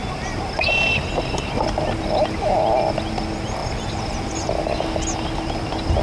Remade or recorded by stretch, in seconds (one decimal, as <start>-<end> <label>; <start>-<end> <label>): 0.0-6.0 recorded